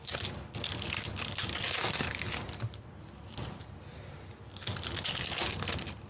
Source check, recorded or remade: recorded